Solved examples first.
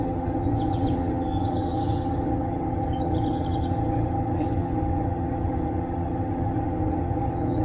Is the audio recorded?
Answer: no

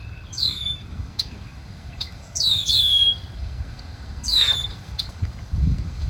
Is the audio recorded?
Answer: no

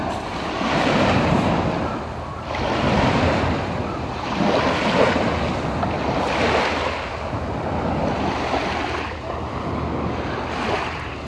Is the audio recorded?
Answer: yes